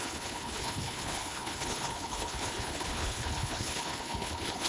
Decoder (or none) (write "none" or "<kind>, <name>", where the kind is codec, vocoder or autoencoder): codec, HILCodec